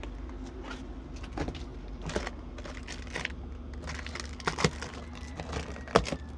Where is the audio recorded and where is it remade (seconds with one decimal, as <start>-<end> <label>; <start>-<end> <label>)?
0.0-6.4 recorded